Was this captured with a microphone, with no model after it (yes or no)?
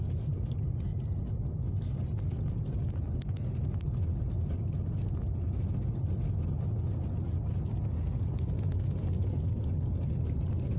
yes